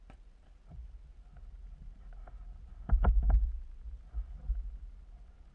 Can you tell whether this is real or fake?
real